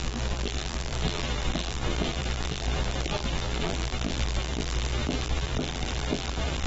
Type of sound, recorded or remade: remade